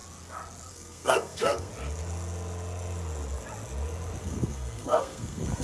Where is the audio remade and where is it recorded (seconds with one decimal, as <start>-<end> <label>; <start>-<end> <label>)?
0.0-0.7 recorded; 0.7-1.7 remade; 1.7-4.2 recorded; 4.2-5.6 remade